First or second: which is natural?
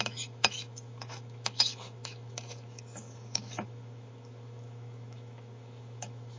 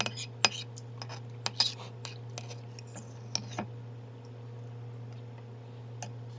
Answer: second